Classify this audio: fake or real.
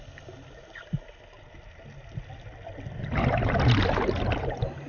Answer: real